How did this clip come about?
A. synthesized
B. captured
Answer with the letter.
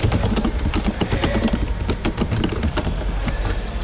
A